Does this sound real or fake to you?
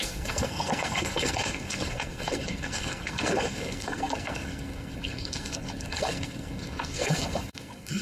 fake